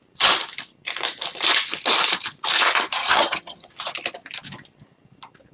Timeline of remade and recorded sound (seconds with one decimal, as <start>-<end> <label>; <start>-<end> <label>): 0.0-3.0 recorded; 3.0-3.7 remade; 3.7-5.5 recorded